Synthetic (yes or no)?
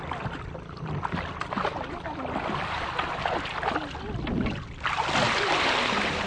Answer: no